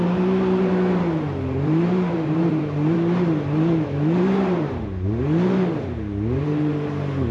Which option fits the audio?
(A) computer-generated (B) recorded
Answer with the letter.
A